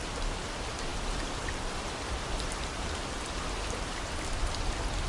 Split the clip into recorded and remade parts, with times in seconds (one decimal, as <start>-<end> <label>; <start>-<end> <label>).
0.0-0.9 recorded; 0.9-3.8 remade; 3.8-5.1 recorded